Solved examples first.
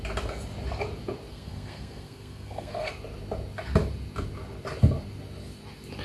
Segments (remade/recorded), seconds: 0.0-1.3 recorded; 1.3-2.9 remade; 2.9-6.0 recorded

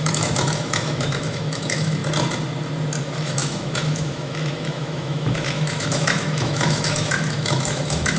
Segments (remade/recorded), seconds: 0.0-2.0 remade; 2.0-3.0 recorded; 3.0-8.2 remade

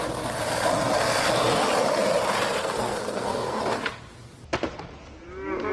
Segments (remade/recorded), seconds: 0.0-2.6 recorded; 2.6-3.6 remade; 3.6-5.7 recorded

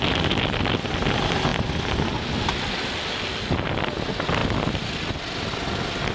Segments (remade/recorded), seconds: 0.0-6.1 recorded

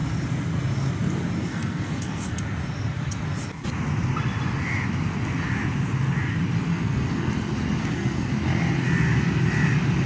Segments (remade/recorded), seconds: 0.0-1.4 recorded; 1.4-2.4 remade; 2.4-6.7 recorded; 6.7-7.3 remade; 7.3-7.8 recorded; 7.8-8.3 remade; 8.3-10.1 recorded

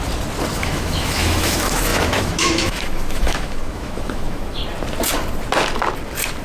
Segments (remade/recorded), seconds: 0.0-0.5 recorded; 0.5-4.6 remade; 4.6-6.4 recorded

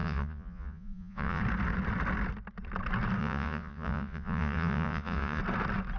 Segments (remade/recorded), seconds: 0.0-1.4 remade; 1.4-3.2 recorded; 3.2-5.4 remade; 5.4-6.0 recorded

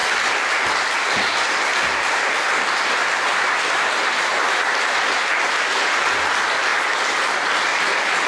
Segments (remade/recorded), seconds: 0.0-8.3 recorded